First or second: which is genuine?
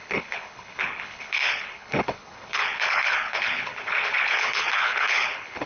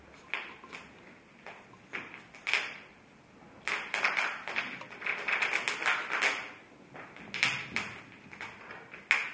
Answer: second